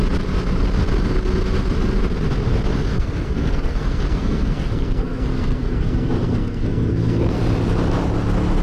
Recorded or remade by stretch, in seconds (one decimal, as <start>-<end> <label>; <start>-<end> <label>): 0.0-2.9 recorded; 2.9-7.4 remade; 7.4-8.6 recorded